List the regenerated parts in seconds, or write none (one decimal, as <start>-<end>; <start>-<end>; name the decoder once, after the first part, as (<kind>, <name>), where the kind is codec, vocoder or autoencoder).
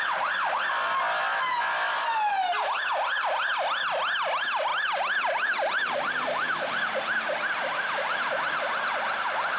none